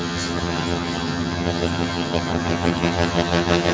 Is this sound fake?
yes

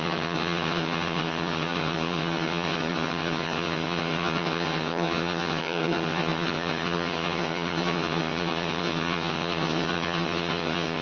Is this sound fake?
yes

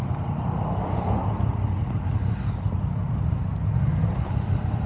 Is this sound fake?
no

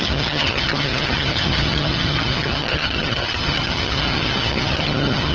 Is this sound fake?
yes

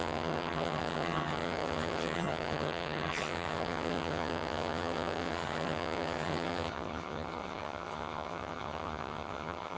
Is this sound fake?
yes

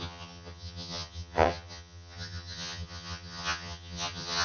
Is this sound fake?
yes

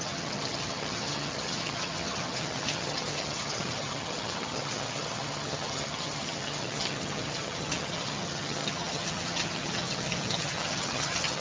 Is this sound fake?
yes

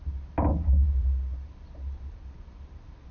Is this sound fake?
no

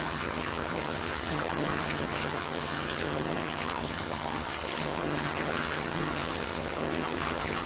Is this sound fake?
yes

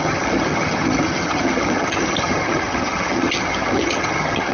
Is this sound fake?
yes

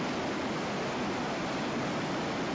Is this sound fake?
no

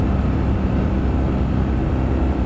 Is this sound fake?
no